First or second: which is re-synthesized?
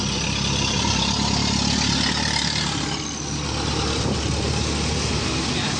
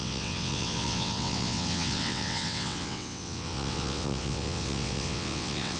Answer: second